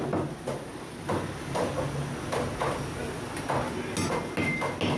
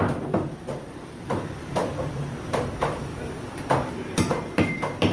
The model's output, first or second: second